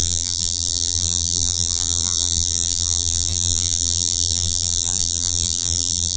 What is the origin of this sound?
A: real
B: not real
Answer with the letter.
B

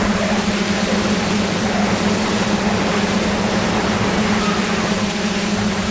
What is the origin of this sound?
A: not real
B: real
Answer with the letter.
A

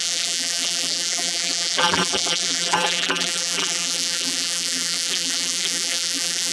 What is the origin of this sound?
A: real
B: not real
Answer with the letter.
B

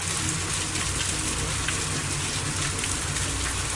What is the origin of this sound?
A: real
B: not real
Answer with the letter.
A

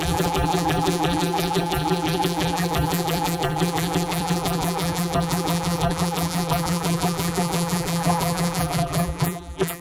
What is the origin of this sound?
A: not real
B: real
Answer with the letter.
A